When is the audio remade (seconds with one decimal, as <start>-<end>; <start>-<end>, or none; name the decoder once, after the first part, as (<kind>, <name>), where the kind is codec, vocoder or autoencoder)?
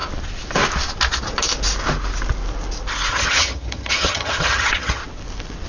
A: 3.1-5.0 (vocoder, HiFi-GAN)